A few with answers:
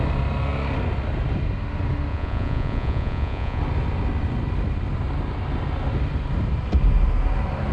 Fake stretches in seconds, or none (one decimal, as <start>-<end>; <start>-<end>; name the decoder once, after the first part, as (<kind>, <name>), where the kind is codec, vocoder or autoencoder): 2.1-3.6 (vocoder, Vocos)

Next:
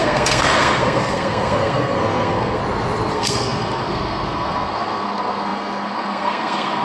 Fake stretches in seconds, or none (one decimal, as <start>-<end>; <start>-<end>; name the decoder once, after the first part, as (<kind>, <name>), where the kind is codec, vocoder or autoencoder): 0.0-2.6 (codec, SNAC); 3.1-6.8

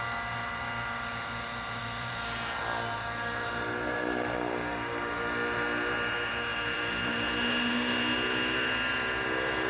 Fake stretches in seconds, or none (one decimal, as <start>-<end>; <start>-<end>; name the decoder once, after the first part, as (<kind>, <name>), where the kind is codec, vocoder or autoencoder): 1.8-2.6 (vocoder, BigVGAN v2); 6.5-7.1

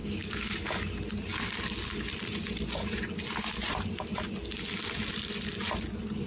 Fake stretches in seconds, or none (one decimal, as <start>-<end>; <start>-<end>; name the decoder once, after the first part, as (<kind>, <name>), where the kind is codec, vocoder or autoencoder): 0.0-0.5 (codec, DAC)

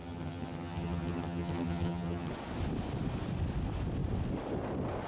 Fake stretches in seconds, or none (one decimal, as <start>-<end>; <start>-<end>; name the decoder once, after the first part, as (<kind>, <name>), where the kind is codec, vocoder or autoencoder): 0.0-2.3 (vocoder, HiFi-GAN)